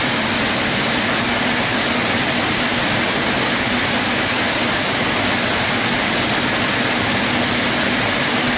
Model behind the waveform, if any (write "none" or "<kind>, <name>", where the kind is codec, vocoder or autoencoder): none